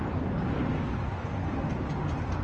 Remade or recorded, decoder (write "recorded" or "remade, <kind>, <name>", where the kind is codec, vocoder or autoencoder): recorded